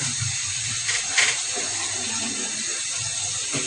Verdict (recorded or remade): recorded